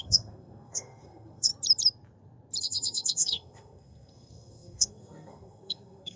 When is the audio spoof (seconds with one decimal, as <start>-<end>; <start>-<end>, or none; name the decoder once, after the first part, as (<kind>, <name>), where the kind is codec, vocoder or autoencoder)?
0.0-1.5 (codec, SNAC); 2.6-6.2